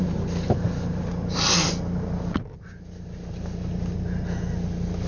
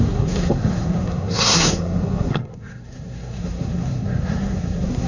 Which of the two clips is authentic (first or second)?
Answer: first